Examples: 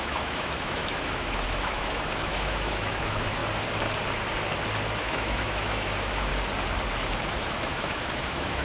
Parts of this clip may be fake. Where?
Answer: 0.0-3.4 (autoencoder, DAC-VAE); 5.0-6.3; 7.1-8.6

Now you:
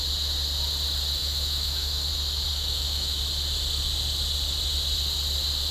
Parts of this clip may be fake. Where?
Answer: 1.2-2.1 (autoencoder, DAC-VAE); 2.5-3.2

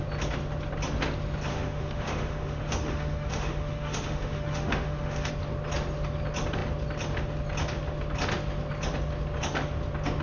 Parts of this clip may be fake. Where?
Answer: 1.5-5.3 (autoencoder, DAC-VAE)

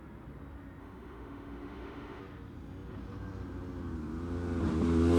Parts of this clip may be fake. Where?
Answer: 0.8-2.2 (autoencoder, DAC-VAE)